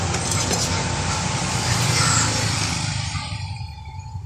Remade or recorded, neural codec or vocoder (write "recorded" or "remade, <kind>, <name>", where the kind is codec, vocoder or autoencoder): recorded